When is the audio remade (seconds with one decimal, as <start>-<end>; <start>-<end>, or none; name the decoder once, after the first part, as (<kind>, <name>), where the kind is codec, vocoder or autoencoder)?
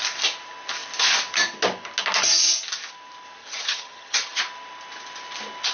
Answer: 3.4-4.4 (vocoder, HiFi-GAN)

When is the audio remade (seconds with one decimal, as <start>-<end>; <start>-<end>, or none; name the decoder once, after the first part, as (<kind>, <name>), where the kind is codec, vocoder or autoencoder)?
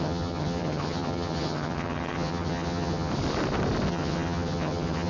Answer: 0.0-3.1 (vocoder, HiFi-GAN); 3.9-5.1